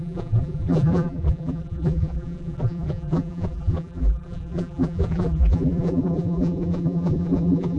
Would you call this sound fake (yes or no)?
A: yes